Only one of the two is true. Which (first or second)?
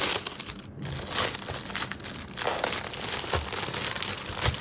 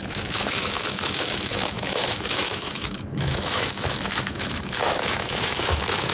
first